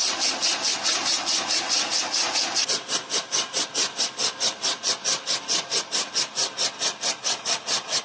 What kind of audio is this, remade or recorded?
recorded